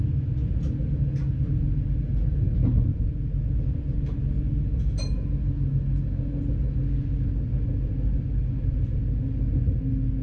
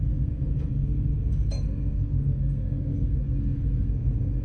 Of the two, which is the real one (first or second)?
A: first